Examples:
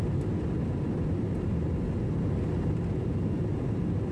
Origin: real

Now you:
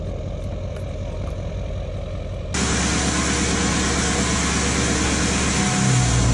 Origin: real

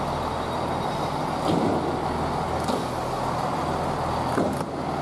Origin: real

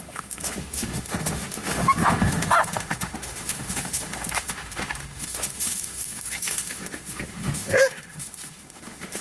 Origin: fake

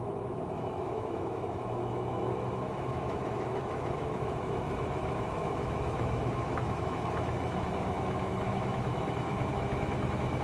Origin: fake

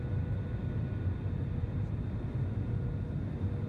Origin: real